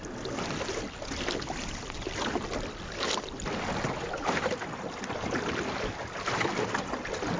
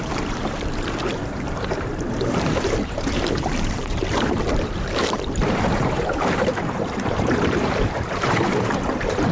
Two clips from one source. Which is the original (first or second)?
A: first